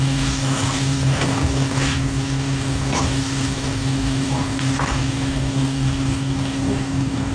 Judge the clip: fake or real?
fake